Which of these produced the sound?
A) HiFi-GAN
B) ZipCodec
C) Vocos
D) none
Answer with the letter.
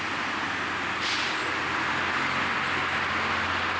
D